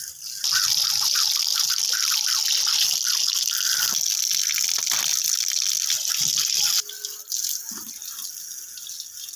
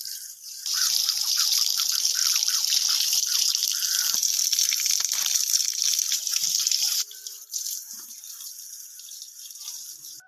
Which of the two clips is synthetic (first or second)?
second